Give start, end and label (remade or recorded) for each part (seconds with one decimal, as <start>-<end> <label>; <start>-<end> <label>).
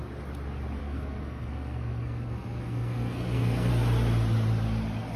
0.0-0.8 recorded; 0.8-3.7 remade; 3.7-5.2 recorded